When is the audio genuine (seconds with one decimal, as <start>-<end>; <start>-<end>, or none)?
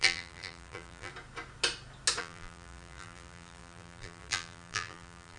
1.1-2.2